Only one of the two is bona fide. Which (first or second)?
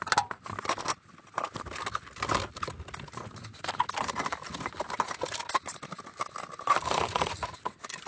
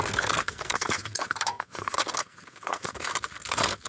first